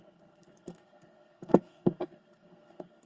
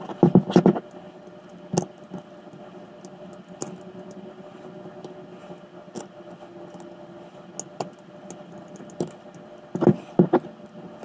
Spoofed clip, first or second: first